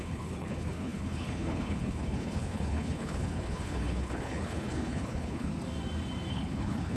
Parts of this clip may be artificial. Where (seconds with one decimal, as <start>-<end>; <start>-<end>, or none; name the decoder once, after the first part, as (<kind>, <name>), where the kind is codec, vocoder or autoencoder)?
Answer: 0.0-5.5 (codec, HILCodec); 6.3-7.0